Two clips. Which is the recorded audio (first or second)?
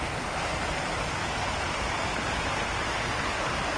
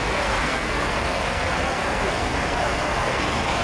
first